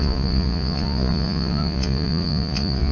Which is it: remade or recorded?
remade